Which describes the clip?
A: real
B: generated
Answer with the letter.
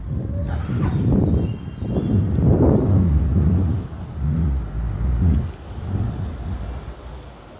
A